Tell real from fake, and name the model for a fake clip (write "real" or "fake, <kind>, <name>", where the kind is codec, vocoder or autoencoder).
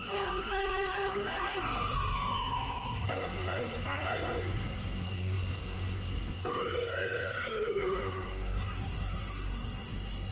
fake, codec, SNAC